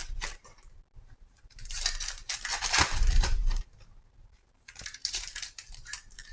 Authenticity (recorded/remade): remade